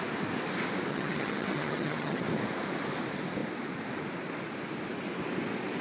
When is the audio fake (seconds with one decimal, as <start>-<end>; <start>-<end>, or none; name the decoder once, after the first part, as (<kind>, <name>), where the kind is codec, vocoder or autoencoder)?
0.9-2.2 (vocoder, HiFi-GAN)